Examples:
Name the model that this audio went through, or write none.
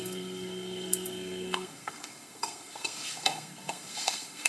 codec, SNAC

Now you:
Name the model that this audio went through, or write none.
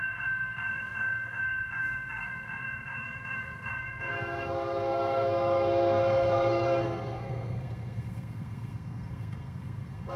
codec, SNAC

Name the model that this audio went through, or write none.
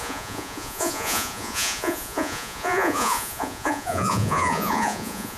vocoder, Vocos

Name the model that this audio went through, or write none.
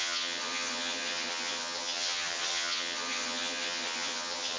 vocoder, HiFi-GAN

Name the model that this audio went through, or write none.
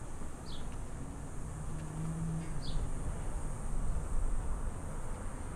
none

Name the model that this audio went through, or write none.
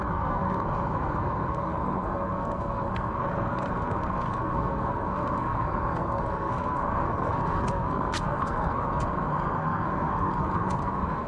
codec, SNAC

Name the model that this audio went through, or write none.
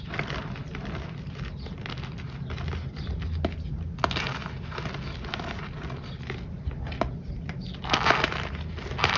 none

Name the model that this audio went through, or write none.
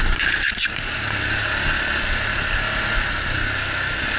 none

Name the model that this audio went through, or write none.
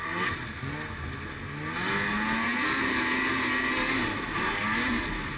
none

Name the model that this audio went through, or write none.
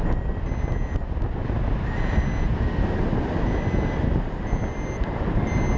none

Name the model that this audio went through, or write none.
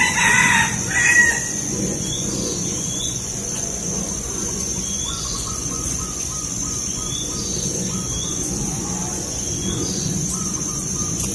vocoder, Vocos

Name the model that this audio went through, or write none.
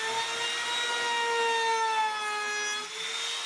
none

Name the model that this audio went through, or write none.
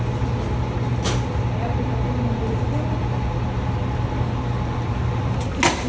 none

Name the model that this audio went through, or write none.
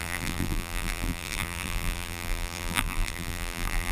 vocoder, BigVGAN v2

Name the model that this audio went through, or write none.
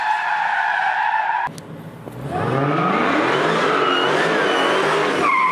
none